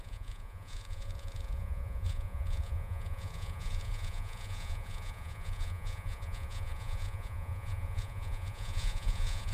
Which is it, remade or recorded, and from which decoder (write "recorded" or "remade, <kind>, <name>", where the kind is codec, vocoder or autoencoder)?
remade, vocoder, Vocos